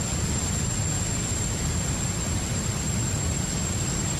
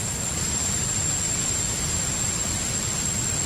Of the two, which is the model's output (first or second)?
first